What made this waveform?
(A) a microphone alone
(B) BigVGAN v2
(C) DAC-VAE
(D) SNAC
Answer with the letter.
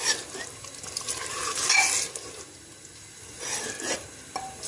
A